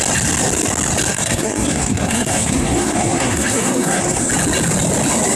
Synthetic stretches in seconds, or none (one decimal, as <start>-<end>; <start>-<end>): 1.1-4.3